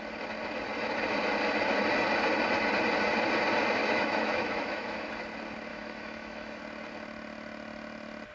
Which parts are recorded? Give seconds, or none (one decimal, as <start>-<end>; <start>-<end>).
0.0-3.8; 5.1-5.7; 6.6-8.3